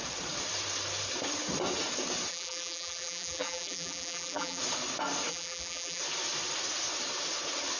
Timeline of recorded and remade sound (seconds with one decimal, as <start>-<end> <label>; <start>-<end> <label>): 0.0-2.3 recorded; 2.3-4.6 remade; 4.6-5.3 recorded; 5.3-6.0 remade; 6.0-7.8 recorded